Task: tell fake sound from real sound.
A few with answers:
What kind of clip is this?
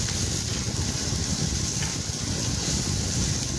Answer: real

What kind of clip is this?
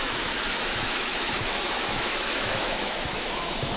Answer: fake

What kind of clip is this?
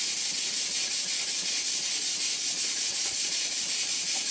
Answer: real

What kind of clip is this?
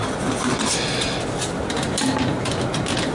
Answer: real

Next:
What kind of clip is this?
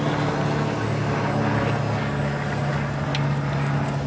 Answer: real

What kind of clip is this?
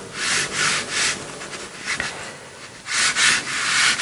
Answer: real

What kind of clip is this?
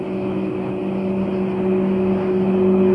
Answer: real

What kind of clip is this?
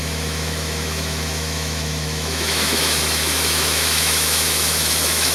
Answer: fake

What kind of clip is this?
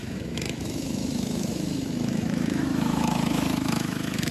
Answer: fake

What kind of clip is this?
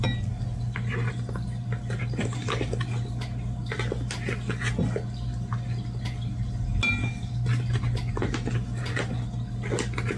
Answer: real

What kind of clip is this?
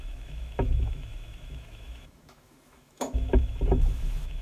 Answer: fake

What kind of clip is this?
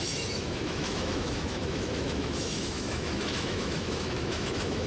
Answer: fake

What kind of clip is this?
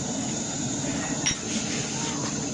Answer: real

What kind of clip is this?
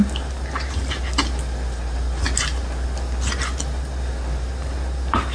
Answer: real